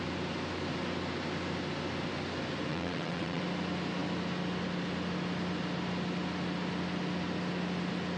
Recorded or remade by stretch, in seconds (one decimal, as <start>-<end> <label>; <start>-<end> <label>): 0.0-2.7 recorded; 2.7-3.4 remade; 3.4-8.2 recorded